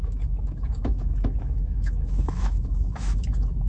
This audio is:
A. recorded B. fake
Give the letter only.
B